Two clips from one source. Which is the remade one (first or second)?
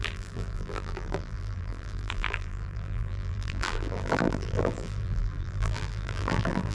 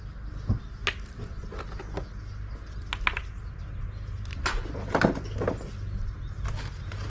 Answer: first